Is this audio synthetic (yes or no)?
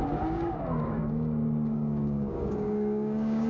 yes